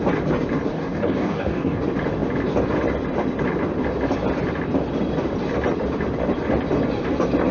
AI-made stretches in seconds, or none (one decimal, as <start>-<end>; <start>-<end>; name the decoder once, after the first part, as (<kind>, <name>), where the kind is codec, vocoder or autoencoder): 0.7-1.8 (codec, DAC)